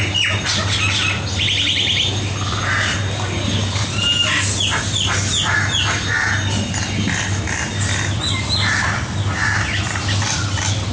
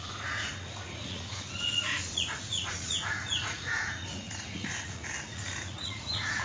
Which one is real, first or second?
first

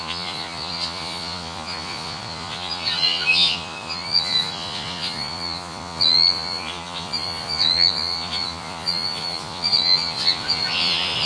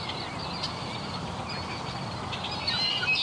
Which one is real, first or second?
second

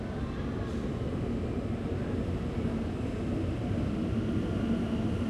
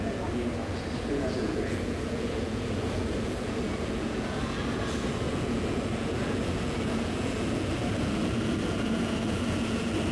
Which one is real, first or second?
first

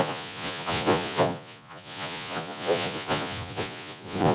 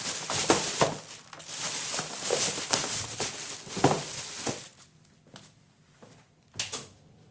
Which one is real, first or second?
second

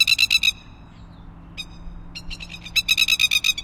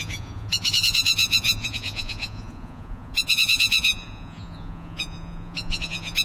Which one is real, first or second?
first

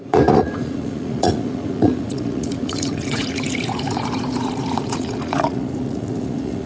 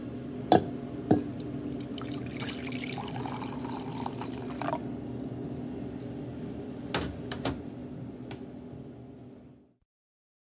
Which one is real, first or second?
second